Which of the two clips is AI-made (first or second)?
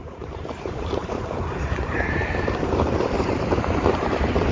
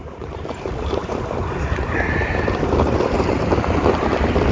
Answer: first